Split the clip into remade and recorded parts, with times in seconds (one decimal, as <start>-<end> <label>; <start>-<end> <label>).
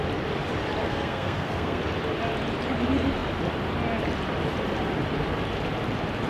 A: 0.0-0.8 recorded; 0.8-1.8 remade; 1.8-6.3 recorded